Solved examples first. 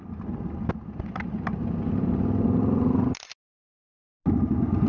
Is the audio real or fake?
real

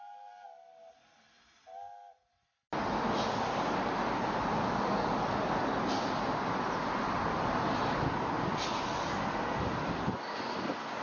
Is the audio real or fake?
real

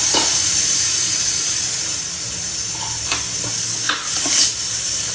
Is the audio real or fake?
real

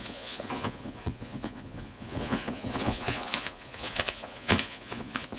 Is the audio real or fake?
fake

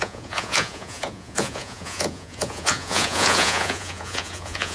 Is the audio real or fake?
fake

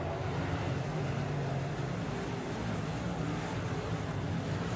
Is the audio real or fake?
real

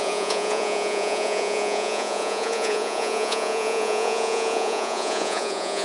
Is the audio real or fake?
fake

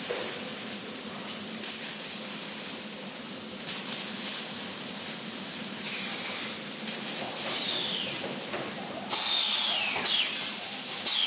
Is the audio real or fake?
real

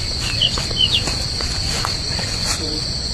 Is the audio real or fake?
fake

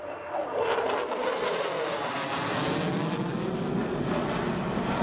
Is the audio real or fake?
real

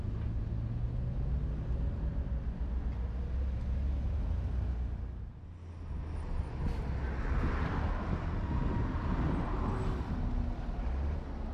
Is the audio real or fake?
real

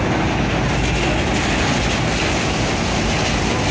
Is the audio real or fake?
real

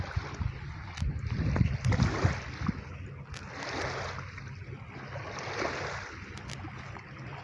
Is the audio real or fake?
real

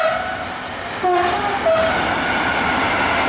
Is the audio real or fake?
real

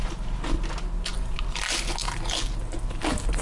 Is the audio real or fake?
real